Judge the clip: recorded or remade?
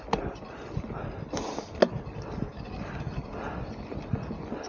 recorded